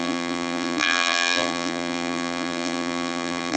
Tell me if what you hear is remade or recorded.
remade